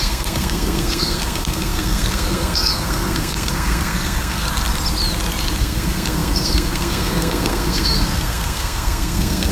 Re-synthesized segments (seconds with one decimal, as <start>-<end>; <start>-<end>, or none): 0.0-4.4; 5.6-9.5